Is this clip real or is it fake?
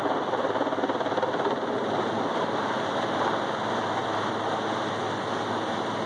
real